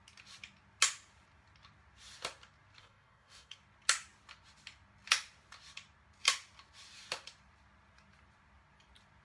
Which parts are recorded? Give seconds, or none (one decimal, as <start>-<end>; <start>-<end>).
0.0-2.8; 3.6-9.2

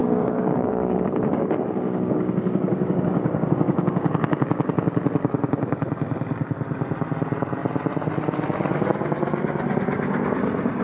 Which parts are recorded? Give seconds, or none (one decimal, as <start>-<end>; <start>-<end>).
4.7-10.8

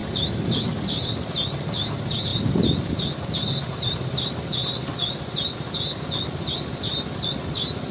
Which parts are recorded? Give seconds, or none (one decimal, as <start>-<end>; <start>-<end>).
0.0-7.9

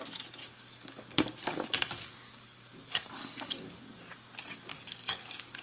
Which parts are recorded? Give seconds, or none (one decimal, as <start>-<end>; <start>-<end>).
0.0-0.4; 3.8-4.4

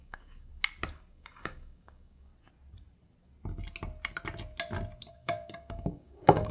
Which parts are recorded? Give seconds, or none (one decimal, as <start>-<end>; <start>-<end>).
0.5-1.1; 2.3-5.1

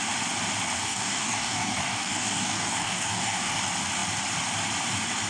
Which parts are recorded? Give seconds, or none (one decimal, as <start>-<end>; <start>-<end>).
0.0-0.8; 3.6-5.3